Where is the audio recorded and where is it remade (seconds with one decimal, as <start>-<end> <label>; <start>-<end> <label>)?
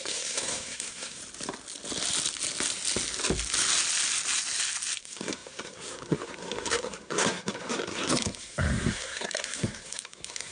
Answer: 0.0-1.2 remade; 1.2-5.0 recorded; 5.0-10.5 remade